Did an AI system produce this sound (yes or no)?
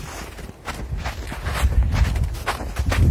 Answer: no